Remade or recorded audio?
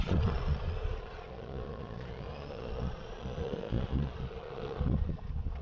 remade